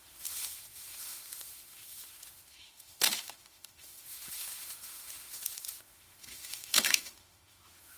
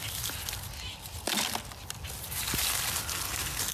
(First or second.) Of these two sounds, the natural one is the second